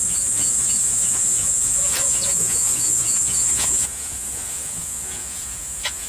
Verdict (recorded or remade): remade